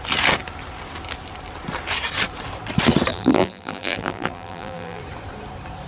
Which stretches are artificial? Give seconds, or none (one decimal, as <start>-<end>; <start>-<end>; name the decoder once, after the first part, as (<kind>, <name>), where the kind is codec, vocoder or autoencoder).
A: 3.1-5.0 (vocoder, BigVGAN v2)